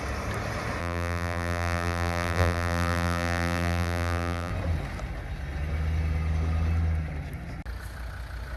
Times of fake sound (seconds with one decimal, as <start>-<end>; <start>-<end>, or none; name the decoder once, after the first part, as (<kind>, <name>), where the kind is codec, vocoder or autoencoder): 0.8-4.5 (vocoder, BigVGAN v2)